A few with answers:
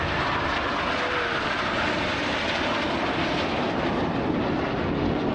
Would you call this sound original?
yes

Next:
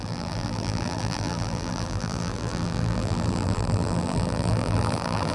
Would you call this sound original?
no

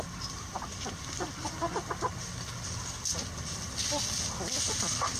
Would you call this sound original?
yes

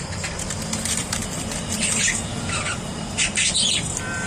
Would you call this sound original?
no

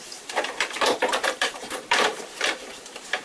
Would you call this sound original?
no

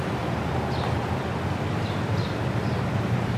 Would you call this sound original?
no